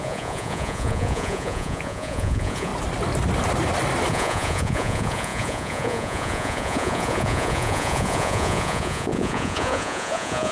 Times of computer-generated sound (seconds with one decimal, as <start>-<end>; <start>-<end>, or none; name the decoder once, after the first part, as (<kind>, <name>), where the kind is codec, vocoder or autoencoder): 0.0-2.7 (vocoder, Vocos); 4.1-10.5